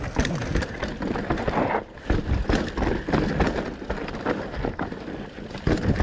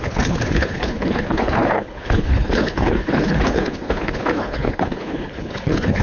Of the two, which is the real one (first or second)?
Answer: first